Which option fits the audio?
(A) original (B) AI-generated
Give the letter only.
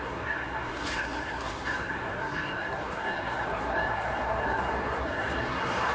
B